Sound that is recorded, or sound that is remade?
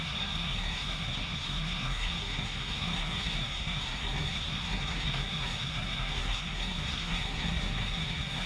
remade